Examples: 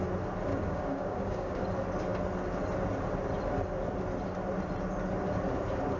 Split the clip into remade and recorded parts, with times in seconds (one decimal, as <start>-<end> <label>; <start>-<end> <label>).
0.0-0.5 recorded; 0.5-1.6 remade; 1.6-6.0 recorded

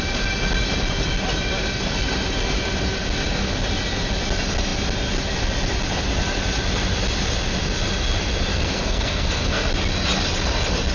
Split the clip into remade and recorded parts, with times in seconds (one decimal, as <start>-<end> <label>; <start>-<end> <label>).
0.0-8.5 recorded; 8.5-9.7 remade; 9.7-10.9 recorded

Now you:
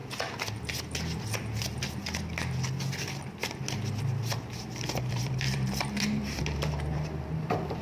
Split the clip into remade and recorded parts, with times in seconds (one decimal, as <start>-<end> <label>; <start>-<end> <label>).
0.0-4.0 recorded; 4.0-7.8 remade